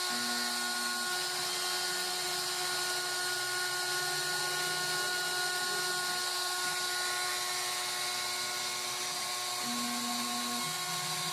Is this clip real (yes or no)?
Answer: yes